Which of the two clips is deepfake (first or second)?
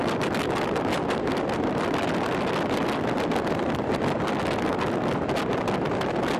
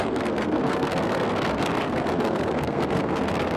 second